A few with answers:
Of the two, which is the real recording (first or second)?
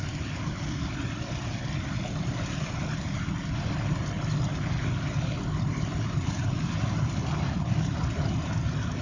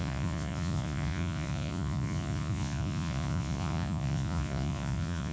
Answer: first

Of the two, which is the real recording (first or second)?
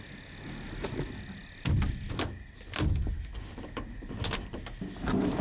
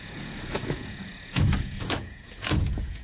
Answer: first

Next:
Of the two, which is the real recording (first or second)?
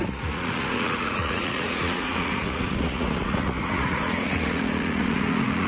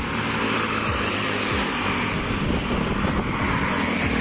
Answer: second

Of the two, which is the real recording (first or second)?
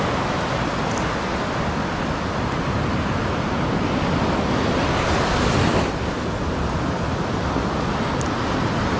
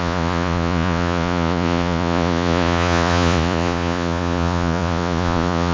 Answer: first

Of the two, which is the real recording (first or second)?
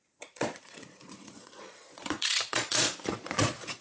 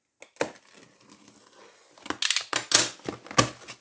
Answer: second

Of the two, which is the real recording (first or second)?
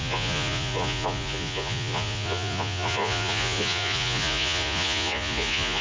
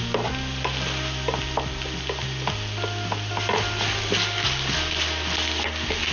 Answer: second